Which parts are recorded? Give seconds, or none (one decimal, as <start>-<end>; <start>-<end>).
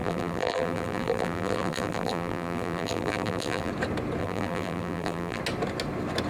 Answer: 3.7-4.2; 5.4-6.3